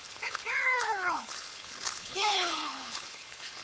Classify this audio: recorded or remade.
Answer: remade